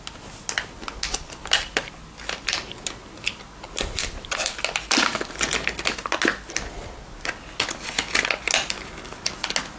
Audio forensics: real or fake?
real